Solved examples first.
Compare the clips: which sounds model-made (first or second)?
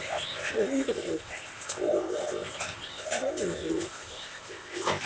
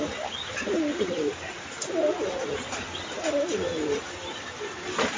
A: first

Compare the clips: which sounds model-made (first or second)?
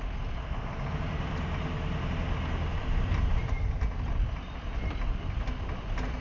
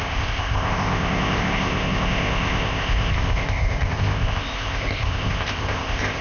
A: second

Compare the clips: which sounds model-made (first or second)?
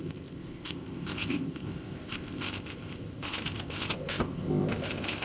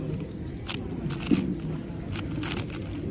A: first